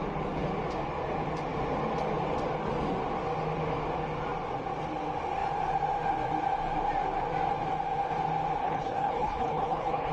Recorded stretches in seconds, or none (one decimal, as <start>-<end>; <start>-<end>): 0.0-8.6